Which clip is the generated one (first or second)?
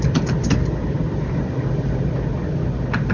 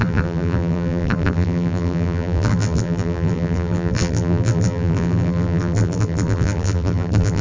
second